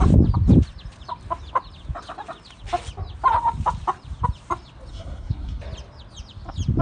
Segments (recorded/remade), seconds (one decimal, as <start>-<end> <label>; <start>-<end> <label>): 0.0-4.9 recorded; 4.9-5.6 remade; 5.6-6.8 recorded